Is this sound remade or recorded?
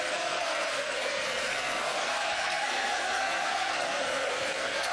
remade